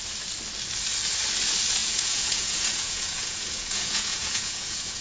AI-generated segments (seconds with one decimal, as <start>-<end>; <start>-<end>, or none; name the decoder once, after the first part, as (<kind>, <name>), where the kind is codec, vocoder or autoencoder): 1.8-5.0 (vocoder, Vocos)